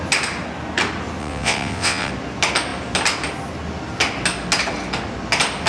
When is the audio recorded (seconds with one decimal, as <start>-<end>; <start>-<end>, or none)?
0.0-1.2; 2.1-5.7

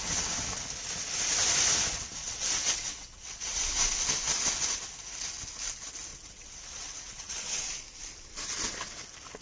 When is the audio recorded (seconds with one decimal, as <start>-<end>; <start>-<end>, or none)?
0.0-2.2; 3.7-6.1; 7.6-9.4

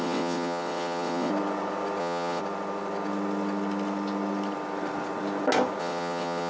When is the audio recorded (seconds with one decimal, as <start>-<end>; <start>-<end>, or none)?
1.3-2.0; 2.4-5.8

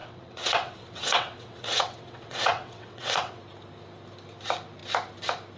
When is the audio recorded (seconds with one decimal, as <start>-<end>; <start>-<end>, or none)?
3.4-5.6